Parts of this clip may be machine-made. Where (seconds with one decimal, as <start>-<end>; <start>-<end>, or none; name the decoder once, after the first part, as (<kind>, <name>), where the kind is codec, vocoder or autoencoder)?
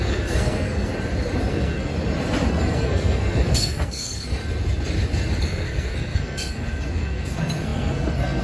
0.0-0.9 (codec, SNAC); 1.5-1.9; 2.5-4.4; 5.4-8.4